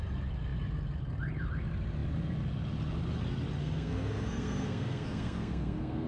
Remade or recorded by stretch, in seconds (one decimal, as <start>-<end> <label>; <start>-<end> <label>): 0.0-3.6 recorded; 3.6-6.1 remade